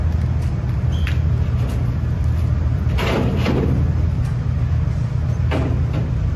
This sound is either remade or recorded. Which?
recorded